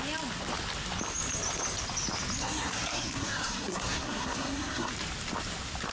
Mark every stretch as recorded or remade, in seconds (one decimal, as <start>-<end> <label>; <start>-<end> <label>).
0.0-2.4 recorded; 2.4-4.9 remade; 4.9-5.9 recorded